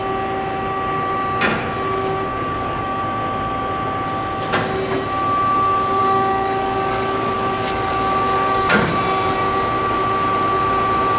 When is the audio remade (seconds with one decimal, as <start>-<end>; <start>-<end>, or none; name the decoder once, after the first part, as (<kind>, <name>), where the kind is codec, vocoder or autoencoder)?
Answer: 2.3-3.0 (codec, DAC); 6.0-8.9